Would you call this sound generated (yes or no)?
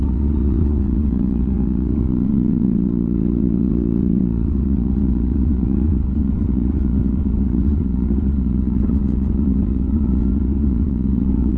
yes